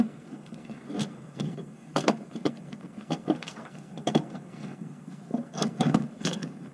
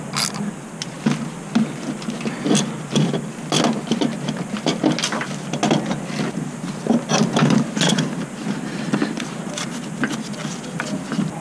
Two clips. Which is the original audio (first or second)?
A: second